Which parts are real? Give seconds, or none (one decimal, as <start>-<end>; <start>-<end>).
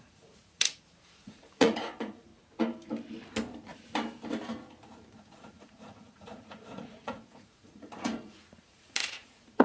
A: 2.3-5.2